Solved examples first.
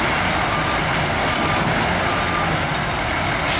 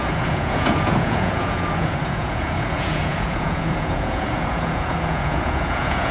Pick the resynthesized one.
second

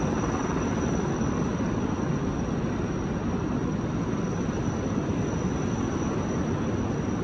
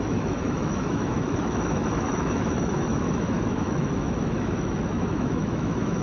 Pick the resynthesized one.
second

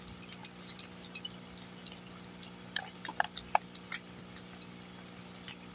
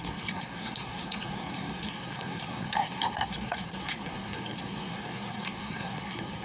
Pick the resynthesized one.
second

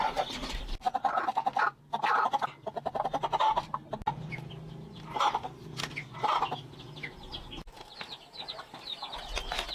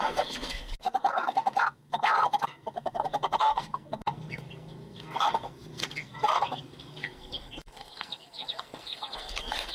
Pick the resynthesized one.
second